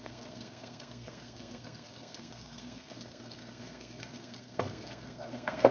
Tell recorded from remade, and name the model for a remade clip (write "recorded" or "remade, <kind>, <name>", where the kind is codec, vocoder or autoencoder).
remade, codec, SNAC